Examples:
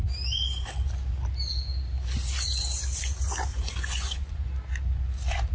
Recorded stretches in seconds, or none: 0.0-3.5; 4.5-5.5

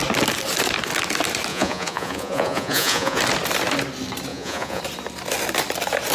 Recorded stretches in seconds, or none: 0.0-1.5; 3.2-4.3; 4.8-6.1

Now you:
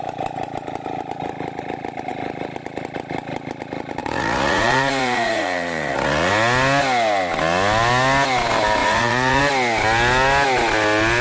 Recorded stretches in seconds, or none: 0.0-4.0; 6.3-8.8; 9.4-11.2

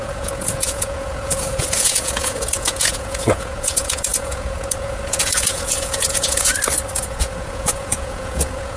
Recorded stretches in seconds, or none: 6.5-7.0